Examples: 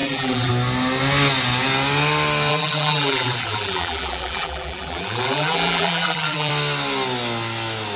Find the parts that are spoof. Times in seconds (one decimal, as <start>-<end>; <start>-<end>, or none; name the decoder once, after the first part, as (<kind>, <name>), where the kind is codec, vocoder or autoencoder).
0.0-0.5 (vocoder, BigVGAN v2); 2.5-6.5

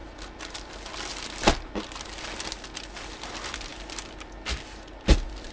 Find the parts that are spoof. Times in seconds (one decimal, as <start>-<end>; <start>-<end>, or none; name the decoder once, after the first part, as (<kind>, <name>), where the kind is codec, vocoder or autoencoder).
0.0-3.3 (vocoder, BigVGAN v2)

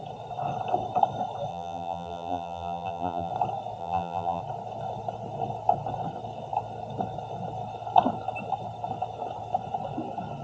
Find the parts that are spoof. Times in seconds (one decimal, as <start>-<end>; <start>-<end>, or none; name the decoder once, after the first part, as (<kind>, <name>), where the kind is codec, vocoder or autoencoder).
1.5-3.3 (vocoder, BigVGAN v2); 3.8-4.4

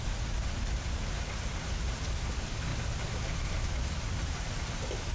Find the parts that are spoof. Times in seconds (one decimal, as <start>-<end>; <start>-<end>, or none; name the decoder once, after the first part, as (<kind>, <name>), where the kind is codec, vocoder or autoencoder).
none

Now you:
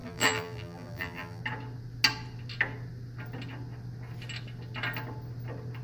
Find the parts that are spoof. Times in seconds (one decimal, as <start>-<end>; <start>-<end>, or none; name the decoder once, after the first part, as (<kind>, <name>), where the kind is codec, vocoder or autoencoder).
0.0-1.4 (vocoder, BigVGAN v2)

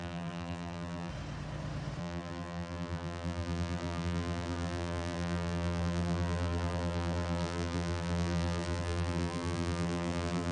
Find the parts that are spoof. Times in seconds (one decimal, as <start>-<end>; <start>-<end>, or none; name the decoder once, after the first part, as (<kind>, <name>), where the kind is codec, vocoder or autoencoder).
0.0-1.1 (vocoder, BigVGAN v2); 2.0-10.5